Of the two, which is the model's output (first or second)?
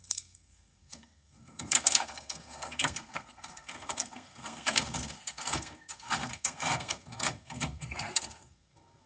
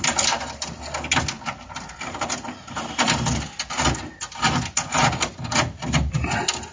first